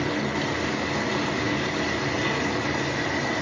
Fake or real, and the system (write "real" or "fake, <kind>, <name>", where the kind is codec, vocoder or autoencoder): real